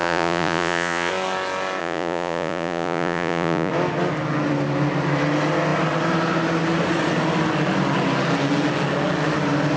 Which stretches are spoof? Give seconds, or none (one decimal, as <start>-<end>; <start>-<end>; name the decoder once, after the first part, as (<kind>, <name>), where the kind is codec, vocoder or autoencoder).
0.0-1.1 (vocoder, Vocos); 1.8-3.7